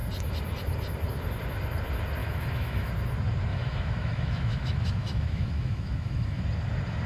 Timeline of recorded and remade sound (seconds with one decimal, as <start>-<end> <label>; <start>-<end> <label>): 0.0-2.2 recorded; 2.2-2.9 remade; 2.9-3.5 recorded; 3.5-6.4 remade; 6.4-7.1 recorded